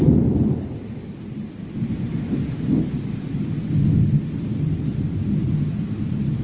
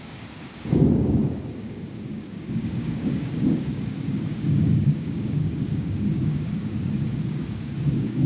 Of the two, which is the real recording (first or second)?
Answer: first